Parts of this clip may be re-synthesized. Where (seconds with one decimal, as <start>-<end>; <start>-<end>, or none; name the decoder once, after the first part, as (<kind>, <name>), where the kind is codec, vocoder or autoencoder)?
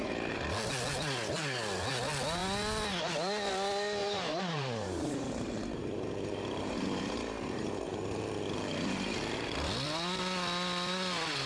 4.0-8.2 (vocoder, BigVGAN v2)